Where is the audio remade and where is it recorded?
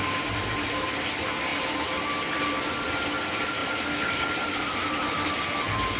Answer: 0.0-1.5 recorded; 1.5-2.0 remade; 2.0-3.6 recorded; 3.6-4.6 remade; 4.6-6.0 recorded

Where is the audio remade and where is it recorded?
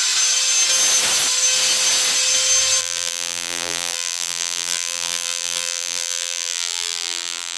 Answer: 0.0-2.8 recorded; 2.8-7.6 remade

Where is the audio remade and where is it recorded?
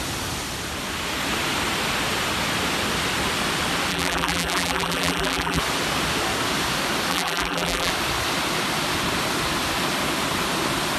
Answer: 0.0-3.9 recorded; 3.9-5.6 remade; 5.6-7.1 recorded; 7.1-7.9 remade; 7.9-11.0 recorded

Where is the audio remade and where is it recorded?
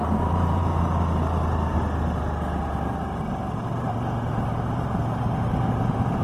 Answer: 0.0-0.6 remade; 0.6-4.3 recorded; 4.3-6.2 remade